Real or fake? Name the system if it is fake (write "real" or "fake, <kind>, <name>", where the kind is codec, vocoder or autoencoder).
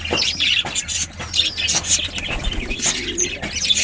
real